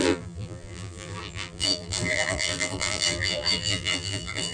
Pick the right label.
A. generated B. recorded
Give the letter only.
A